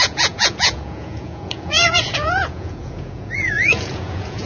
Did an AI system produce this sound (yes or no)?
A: yes